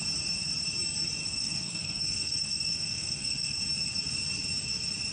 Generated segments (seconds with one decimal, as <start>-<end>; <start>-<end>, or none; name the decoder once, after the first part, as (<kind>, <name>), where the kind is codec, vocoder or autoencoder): 1.2-3.6 (codec, SNAC)